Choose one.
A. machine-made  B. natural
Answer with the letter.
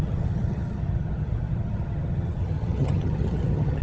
A